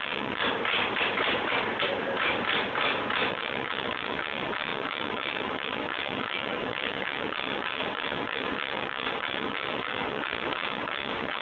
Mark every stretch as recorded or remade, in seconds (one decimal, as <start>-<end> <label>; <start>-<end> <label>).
0.0-0.4 remade; 0.4-3.3 recorded; 3.3-11.4 remade

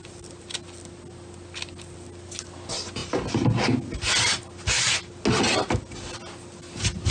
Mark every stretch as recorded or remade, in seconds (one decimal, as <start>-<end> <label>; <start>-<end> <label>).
0.0-7.1 recorded

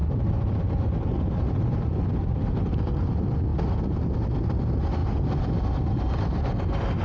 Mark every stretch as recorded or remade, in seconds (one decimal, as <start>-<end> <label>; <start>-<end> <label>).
0.0-2.9 remade; 2.9-7.0 recorded

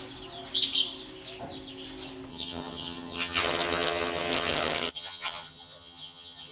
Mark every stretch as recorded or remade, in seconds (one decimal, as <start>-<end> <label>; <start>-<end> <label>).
0.0-2.3 recorded; 2.3-6.5 remade

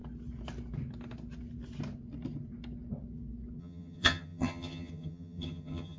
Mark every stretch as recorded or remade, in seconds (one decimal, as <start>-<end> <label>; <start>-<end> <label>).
0.0-3.6 recorded; 3.6-6.0 remade